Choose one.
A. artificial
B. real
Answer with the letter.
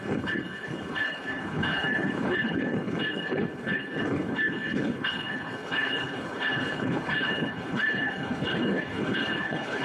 A